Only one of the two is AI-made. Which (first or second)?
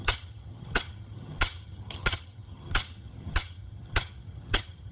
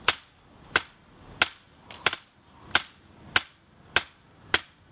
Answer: first